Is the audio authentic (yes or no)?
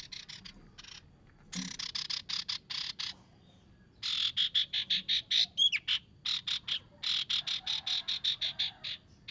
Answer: yes